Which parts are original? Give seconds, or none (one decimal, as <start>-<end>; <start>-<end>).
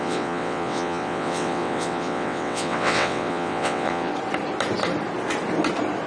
4.1-6.1